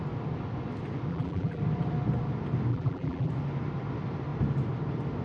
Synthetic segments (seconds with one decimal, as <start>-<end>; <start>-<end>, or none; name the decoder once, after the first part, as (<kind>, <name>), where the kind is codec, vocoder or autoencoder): 1.1-1.6 (vocoder, BigVGAN v2); 2.7-3.3